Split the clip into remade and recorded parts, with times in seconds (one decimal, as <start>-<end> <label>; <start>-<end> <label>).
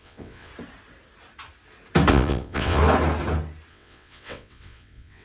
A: 0.0-0.5 remade; 0.5-2.1 recorded; 2.1-2.8 remade; 2.8-3.7 recorded; 3.7-5.2 remade